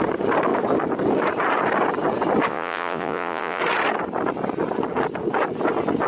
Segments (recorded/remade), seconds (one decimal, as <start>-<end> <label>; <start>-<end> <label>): 0.0-2.5 recorded; 2.5-3.6 remade; 3.6-6.1 recorded